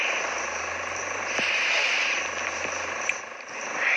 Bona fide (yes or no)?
yes